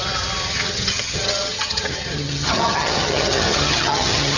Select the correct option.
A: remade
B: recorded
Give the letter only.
A